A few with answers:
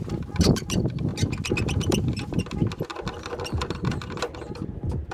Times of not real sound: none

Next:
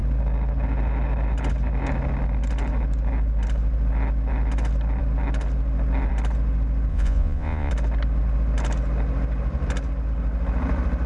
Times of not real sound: 6.9-7.7 (vocoder, Vocos)

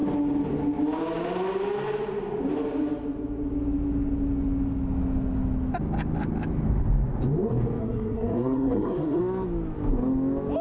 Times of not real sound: 7.8-9.2 (codec, SNAC)

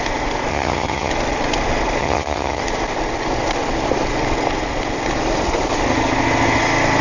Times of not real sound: 0.5-1.1 (vocoder, HiFi-GAN); 2.0-2.6